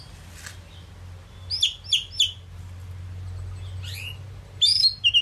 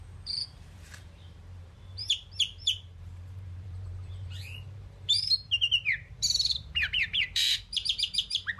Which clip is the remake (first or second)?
second